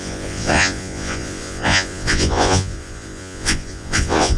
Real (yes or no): no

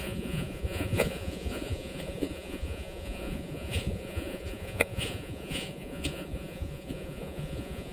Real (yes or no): no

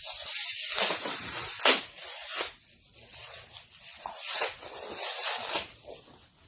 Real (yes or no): yes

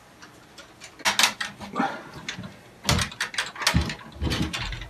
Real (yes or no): yes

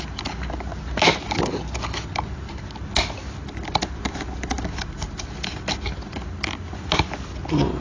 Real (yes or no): yes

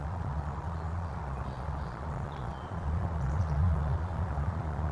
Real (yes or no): no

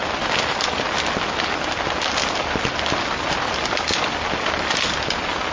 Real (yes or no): yes